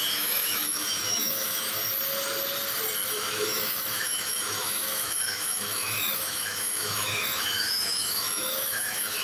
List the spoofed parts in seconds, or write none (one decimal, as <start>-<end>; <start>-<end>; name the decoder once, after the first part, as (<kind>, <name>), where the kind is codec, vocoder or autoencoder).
0.0-1.8 (autoencoder, DAC-VAE); 3.1-9.2